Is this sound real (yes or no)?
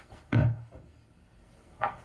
no